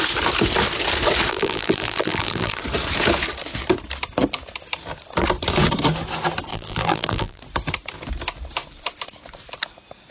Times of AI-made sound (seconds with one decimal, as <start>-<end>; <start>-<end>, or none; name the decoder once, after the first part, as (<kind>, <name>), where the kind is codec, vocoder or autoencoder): 1.3-2.6 (vocoder, BigVGAN v2); 6.5-7.4